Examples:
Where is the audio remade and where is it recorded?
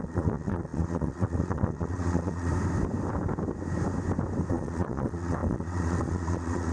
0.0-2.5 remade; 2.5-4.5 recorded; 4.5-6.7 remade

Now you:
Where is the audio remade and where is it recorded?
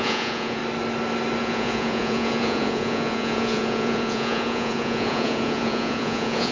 0.0-0.6 remade; 0.6-1.4 recorded; 1.4-6.5 remade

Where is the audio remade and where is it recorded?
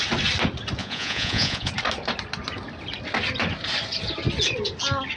0.0-0.8 recorded; 0.8-1.7 remade; 1.7-5.2 recorded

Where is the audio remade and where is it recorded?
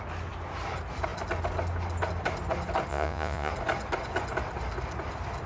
0.0-2.9 recorded; 2.9-3.5 remade; 3.5-5.5 recorded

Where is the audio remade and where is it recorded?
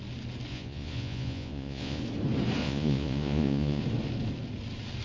0.0-0.5 recorded; 0.5-2.0 remade; 2.0-2.6 recorded; 2.6-3.8 remade; 3.8-5.0 recorded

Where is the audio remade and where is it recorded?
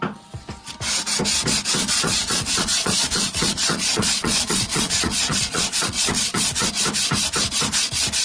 0.0-1.8 recorded; 1.8-6.7 remade; 6.7-8.2 recorded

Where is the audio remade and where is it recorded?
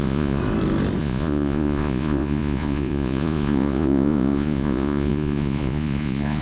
0.0-0.4 remade; 0.4-1.0 recorded; 1.0-6.4 remade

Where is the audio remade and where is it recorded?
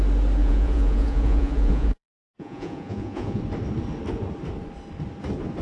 0.0-0.4 recorded; 0.4-3.4 remade; 3.4-5.6 recorded